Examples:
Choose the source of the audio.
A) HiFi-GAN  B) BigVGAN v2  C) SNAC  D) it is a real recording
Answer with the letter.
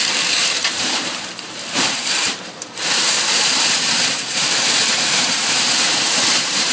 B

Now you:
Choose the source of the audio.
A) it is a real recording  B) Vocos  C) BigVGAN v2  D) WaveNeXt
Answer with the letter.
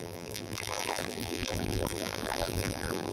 C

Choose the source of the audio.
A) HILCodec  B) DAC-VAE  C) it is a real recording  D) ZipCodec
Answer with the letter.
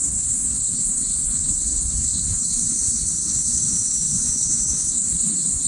A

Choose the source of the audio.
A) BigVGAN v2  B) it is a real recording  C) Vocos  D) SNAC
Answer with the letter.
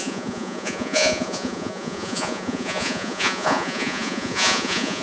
C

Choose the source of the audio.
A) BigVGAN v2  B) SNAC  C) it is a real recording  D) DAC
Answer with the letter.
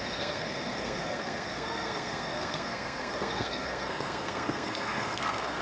B